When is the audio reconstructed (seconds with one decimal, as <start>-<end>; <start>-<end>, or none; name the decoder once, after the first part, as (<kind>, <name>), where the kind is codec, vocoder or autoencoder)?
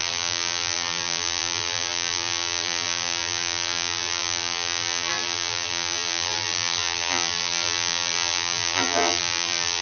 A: 0.0-9.8 (vocoder, BigVGAN v2)